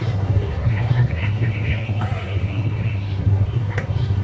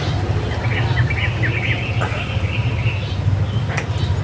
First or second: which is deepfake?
first